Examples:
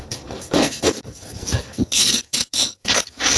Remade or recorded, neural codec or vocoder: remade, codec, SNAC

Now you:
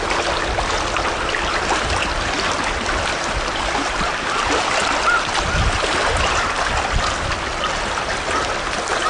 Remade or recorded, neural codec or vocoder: recorded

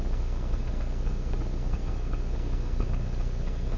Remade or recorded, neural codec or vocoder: remade, codec, SNAC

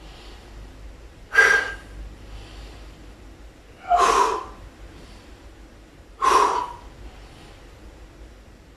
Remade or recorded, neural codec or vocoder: recorded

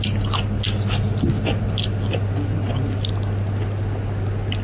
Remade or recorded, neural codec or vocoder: recorded